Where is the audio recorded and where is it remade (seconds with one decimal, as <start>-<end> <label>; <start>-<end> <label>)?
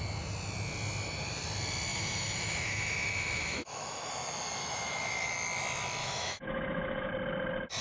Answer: 0.0-1.9 recorded; 1.9-4.1 remade; 4.1-4.6 recorded; 4.6-5.3 remade; 5.3-6.0 recorded; 6.0-7.1 remade; 7.1-7.8 recorded